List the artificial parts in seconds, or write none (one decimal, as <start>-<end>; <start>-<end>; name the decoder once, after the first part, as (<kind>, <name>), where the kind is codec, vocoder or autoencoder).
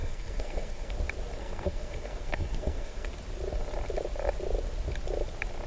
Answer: 0.0-0.9 (codec, SNAC); 1.4-3.1